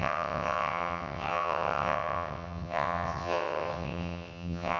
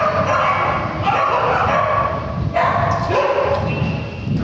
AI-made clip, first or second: first